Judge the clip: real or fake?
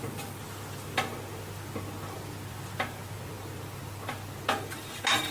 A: real